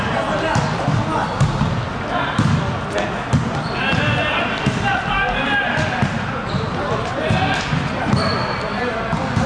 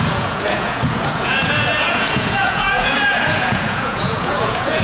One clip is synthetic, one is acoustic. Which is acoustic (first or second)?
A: first